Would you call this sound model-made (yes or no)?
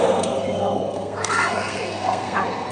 yes